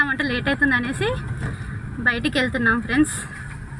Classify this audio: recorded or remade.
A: recorded